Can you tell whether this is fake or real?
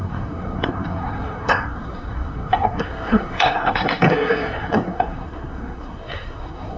fake